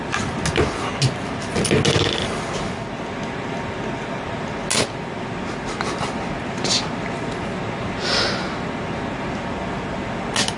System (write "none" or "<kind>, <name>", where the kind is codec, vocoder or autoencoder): none